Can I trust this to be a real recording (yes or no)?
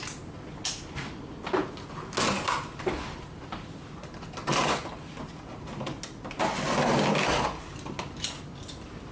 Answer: yes